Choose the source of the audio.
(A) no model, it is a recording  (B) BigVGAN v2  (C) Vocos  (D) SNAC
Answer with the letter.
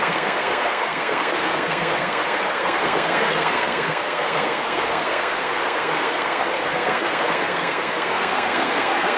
D